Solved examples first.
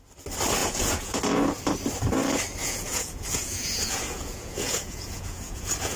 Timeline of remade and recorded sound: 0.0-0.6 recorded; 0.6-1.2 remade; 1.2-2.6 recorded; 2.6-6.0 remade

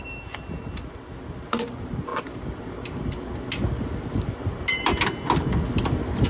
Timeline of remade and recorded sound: 0.0-6.3 recorded

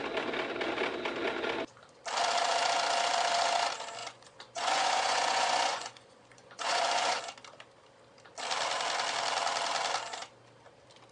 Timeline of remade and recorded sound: 0.0-4.0 recorded; 4.0-7.2 remade; 7.2-11.1 recorded

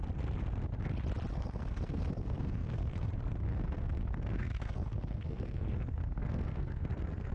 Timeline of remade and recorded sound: 0.0-1.3 recorded; 1.3-3.1 remade; 3.1-3.5 recorded; 3.5-7.3 remade

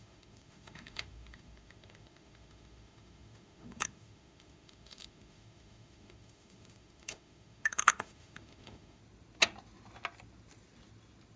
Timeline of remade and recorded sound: 0.0-9.0 remade; 9.0-11.4 recorded